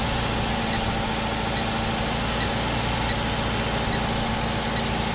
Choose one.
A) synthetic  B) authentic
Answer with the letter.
B